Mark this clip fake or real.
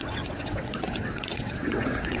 fake